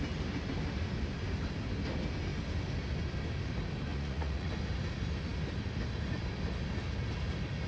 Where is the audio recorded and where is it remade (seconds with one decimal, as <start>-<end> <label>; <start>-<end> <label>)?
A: 0.0-3.9 recorded; 3.9-4.5 remade; 4.5-7.7 recorded